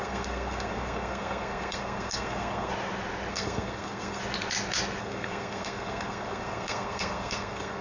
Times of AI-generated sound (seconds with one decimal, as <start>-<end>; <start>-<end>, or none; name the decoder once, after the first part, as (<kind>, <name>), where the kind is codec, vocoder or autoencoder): 0.0-2.7 (codec, SNAC); 3.3-4.2; 5.0-7.8